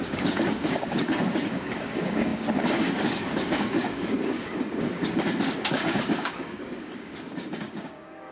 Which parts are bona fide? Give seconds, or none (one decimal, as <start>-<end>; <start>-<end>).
none